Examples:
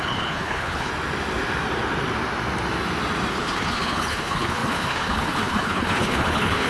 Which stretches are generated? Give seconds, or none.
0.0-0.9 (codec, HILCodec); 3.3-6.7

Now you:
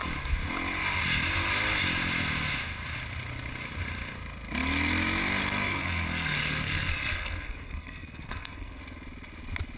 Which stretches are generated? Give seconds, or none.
5.4-8.8 (codec, SNAC)

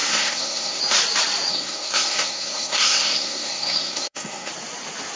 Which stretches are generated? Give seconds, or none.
0.0-0.8 (codec, SNAC); 1.5-4.5

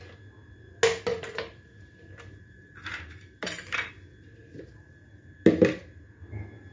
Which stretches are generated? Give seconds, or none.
1.1-3.9 (vocoder, BigVGAN v2); 4.4-5.1